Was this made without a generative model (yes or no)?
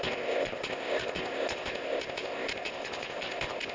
no